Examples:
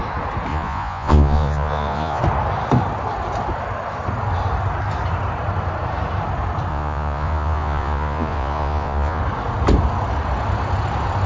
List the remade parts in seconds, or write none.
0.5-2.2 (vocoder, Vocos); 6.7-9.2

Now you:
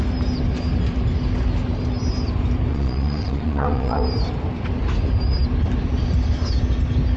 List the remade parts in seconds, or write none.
2.7-4.0 (vocoder, Vocos)